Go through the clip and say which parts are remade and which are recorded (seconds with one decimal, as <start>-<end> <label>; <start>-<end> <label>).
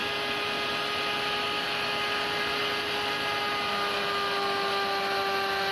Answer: 0.0-5.7 recorded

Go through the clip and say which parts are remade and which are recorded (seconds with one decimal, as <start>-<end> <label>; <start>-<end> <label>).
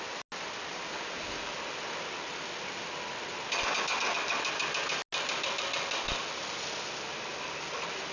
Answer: 0.0-8.1 recorded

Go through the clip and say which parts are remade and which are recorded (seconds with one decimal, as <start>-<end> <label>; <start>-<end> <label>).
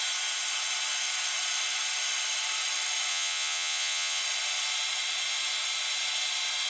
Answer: 0.0-3.1 recorded; 3.1-4.2 remade; 4.2-6.7 recorded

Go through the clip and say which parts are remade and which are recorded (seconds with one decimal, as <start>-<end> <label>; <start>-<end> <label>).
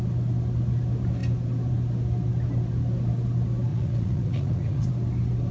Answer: 0.0-3.7 recorded; 3.7-4.9 remade; 4.9-5.5 recorded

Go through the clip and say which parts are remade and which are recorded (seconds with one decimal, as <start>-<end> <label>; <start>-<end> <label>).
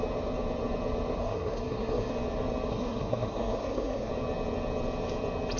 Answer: 0.0-1.2 recorded; 1.2-2.1 remade; 2.1-2.7 recorded; 2.7-4.1 remade; 4.1-5.6 recorded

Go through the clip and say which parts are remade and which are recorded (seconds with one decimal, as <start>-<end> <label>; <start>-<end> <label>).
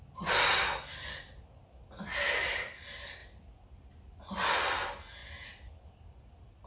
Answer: 0.0-6.7 recorded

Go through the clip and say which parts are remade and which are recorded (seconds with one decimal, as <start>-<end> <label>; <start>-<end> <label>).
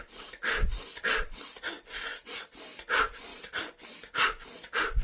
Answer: 0.0-5.0 recorded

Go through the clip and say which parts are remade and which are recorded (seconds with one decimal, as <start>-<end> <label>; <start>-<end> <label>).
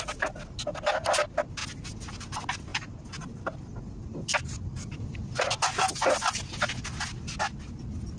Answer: 0.0-8.2 recorded